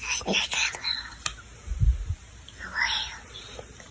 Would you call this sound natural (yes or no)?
yes